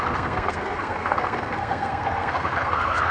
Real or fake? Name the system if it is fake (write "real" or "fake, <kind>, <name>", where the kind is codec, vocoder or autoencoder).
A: fake, codec, SNAC